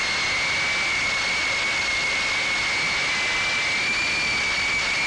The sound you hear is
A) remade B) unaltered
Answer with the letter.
B